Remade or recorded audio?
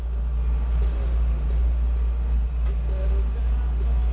recorded